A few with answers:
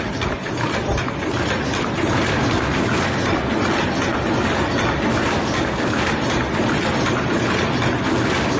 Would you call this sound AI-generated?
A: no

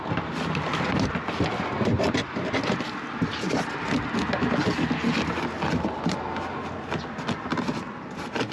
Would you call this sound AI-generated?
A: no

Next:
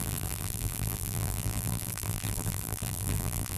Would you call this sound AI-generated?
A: yes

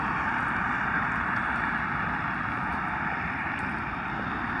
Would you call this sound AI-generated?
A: no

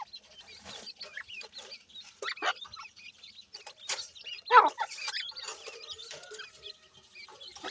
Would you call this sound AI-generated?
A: no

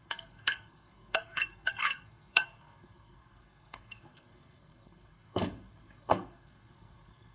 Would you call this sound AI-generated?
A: yes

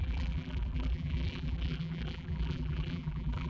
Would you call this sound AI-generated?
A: yes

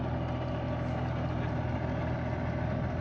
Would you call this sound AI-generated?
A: no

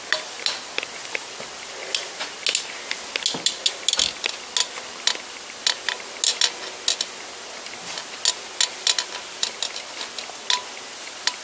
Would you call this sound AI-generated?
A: no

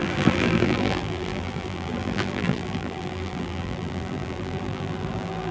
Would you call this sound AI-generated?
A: yes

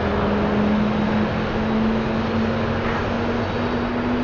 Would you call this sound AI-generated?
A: no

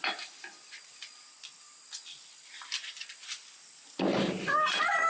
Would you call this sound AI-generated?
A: no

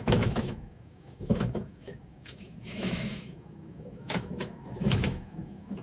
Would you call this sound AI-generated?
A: yes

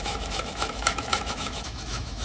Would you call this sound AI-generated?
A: yes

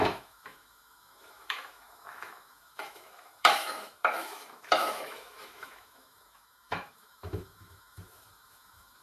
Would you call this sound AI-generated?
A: yes